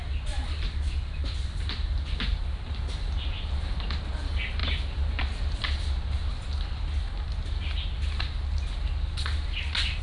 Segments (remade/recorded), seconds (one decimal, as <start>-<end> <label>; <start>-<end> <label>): 0.0-10.0 recorded